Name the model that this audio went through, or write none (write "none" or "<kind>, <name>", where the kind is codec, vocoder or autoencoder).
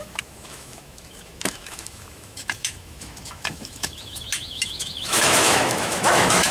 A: autoencoder, DAC-VAE